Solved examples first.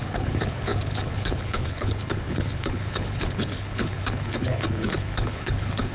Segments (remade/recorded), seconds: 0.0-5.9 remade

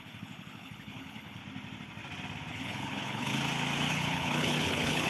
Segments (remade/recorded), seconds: 0.0-1.4 remade; 1.4-2.5 recorded; 2.5-3.3 remade; 3.3-3.9 recorded; 3.9-5.1 remade

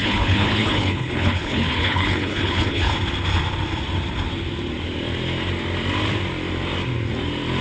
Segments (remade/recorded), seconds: 0.0-2.9 remade; 2.9-7.6 recorded

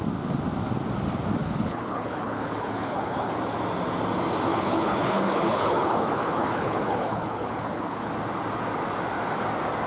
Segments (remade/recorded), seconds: 0.0-1.4 recorded; 1.4-3.4 remade; 3.4-4.5 recorded; 4.5-8.1 remade; 8.1-9.9 recorded